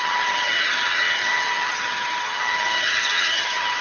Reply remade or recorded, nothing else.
remade